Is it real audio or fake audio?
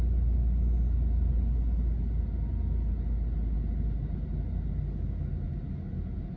real